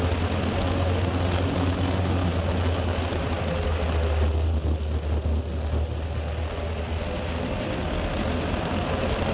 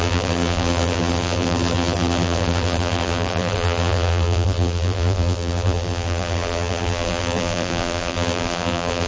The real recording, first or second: first